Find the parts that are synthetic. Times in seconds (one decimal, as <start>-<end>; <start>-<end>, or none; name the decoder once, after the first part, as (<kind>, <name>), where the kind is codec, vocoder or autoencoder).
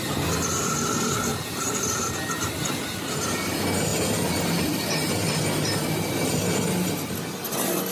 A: none